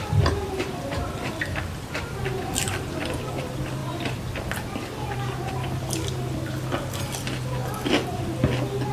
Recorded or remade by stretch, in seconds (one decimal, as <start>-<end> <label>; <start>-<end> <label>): 0.0-3.8 remade; 3.8-5.5 recorded; 5.5-7.6 remade; 7.6-8.9 recorded